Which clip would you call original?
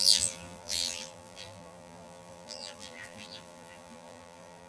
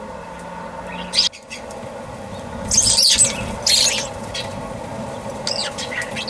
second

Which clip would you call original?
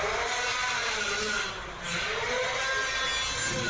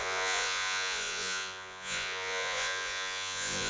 first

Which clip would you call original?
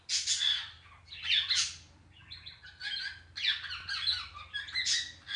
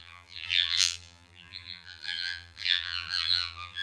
first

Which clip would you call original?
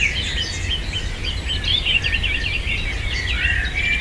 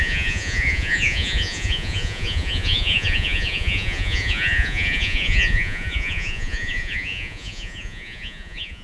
first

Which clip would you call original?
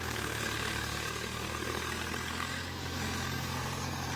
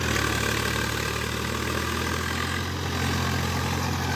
second